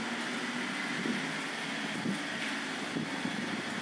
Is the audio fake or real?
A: real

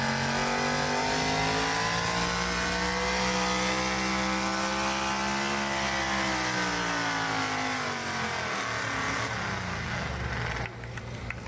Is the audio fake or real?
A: real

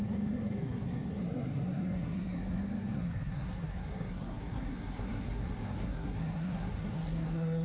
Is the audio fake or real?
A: fake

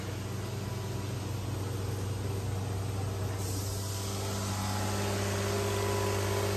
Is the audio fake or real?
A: real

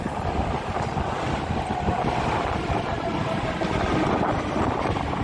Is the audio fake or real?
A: real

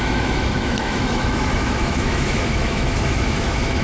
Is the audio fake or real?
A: fake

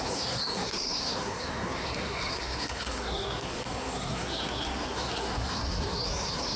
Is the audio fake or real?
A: fake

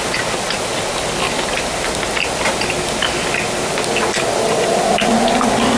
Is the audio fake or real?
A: real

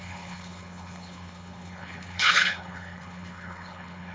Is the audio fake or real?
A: fake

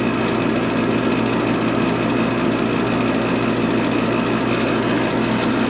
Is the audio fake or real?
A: real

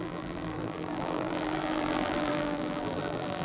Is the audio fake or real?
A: fake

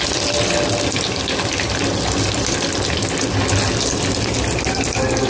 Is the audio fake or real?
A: real